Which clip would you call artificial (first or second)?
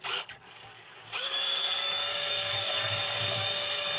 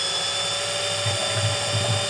first